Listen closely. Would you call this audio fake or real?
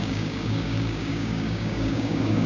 fake